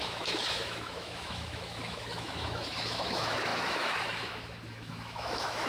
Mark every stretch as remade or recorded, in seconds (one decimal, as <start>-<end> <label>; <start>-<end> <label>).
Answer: 0.0-5.7 remade